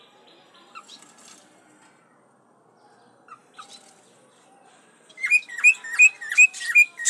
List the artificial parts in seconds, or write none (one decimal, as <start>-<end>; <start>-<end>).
none